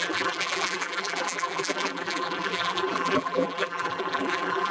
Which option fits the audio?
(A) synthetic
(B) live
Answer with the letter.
A